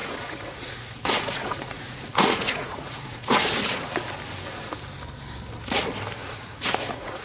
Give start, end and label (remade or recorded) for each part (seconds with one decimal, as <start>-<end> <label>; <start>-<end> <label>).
0.0-3.9 remade; 3.9-6.2 recorded; 6.2-7.2 remade